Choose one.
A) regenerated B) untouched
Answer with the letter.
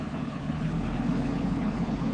A